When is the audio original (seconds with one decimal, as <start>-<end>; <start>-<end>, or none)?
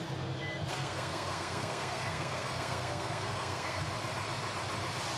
0.0-0.7; 3.8-5.2